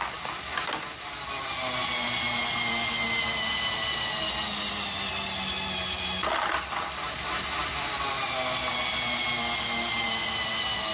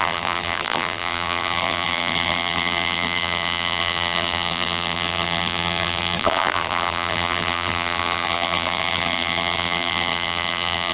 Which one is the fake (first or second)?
second